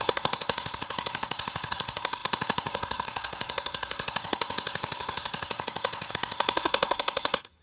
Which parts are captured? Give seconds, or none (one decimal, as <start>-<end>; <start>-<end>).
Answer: none